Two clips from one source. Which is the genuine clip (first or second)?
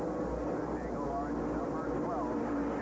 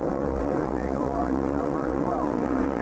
first